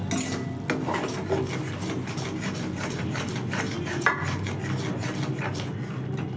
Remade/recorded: recorded